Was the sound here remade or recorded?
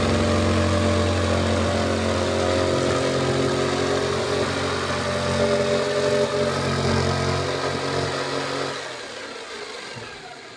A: recorded